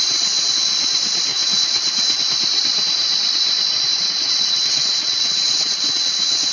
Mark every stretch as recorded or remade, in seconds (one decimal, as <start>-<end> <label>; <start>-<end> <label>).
0.0-1.3 recorded; 1.3-2.2 remade; 2.2-3.9 recorded; 3.9-6.5 remade